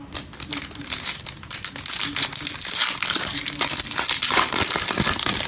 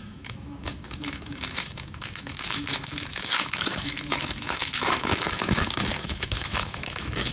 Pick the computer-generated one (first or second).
second